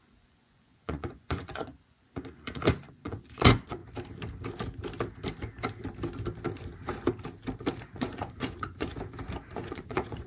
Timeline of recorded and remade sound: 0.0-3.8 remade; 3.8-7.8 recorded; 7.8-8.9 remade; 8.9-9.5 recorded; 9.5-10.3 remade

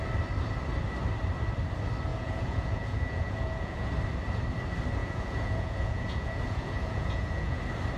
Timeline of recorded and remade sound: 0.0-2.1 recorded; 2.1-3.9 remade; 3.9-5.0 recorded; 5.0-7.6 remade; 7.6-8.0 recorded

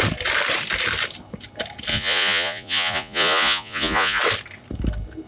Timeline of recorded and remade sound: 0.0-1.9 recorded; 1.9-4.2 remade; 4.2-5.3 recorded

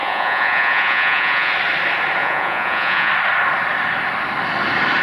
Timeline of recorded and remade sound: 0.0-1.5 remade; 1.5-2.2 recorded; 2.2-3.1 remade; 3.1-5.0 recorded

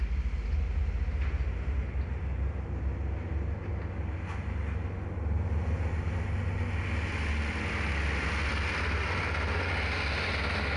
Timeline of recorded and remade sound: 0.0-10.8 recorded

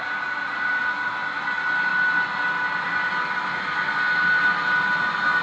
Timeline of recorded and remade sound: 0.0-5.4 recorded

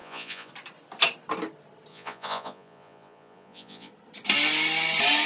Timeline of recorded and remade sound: 0.0-0.5 remade; 0.5-1.9 recorded; 1.9-3.9 remade; 3.9-5.3 recorded

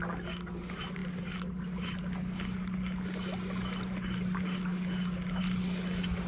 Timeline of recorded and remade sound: 0.0-6.3 recorded